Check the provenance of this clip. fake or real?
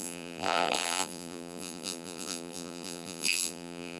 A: fake